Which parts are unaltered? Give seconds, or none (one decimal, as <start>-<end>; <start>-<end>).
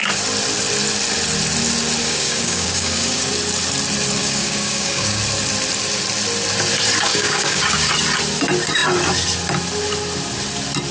0.0-2.0; 3.3-4.2; 5.2-7.1; 7.9-10.9